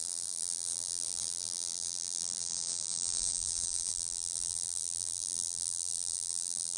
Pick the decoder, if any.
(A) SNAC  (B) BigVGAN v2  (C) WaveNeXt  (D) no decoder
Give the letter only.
B